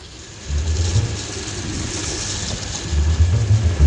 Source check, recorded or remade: recorded